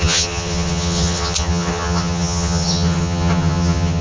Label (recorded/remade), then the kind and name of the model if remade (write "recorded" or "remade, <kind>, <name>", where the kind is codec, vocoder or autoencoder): remade, vocoder, HiFi-GAN